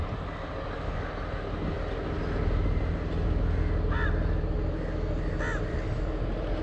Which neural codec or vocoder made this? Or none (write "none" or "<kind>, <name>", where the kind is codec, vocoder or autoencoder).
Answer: none